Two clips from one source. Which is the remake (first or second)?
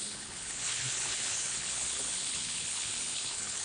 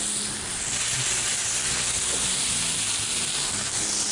first